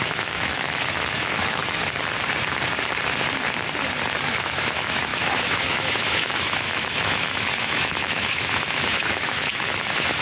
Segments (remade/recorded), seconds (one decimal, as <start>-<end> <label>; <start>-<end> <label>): 0.0-1.6 remade; 1.6-4.4 recorded; 4.4-10.2 remade